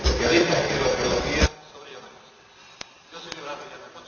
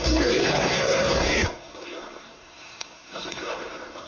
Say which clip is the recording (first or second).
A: first